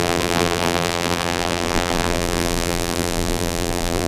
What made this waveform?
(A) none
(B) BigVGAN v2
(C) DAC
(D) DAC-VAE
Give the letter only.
B